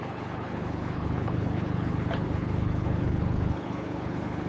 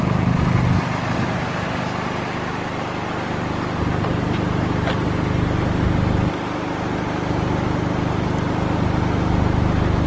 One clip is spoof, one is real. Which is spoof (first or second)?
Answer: first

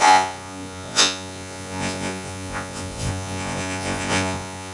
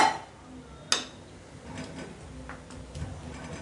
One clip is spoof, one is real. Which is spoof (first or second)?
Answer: first